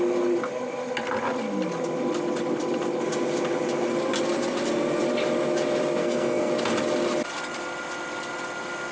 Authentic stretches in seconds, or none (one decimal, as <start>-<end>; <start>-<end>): 0.0-6.0; 6.5-8.9